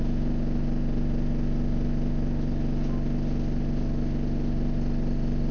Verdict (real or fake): real